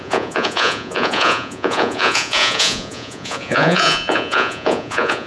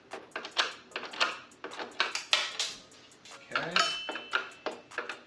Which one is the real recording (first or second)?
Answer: second